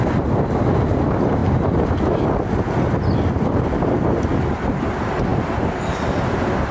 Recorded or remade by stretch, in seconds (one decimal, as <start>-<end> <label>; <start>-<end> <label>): 0.0-6.7 recorded